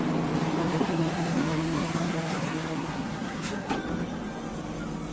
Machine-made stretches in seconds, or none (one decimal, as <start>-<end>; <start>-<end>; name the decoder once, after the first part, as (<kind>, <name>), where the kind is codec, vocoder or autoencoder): 0.6-3.7 (codec, SNAC)